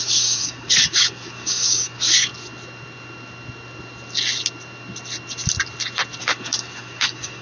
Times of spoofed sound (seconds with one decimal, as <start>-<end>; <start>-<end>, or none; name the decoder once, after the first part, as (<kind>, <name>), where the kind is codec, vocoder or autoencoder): 0.0-2.3 (codec, DAC); 6.2-7.4